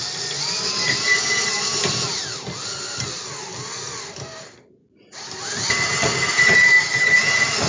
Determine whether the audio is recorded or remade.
recorded